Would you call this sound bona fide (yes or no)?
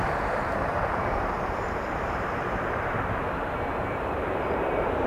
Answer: no